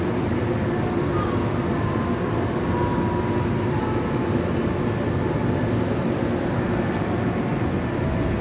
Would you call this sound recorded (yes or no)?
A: yes